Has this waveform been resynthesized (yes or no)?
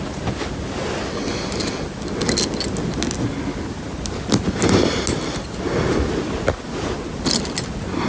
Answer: no